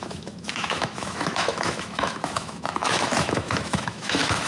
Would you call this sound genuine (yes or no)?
no